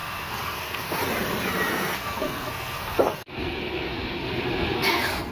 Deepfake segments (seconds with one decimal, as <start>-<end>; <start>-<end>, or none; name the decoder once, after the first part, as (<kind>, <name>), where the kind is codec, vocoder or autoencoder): 0.0-1.0 (codec, SNAC); 1.7-5.3